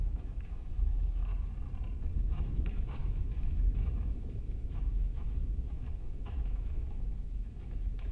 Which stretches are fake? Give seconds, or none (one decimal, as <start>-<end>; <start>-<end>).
0.0-1.3; 2.2-8.1